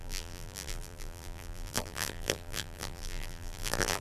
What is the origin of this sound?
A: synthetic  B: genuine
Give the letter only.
A